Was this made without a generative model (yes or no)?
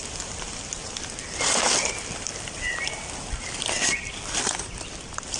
no